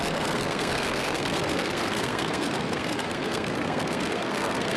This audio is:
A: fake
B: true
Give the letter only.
A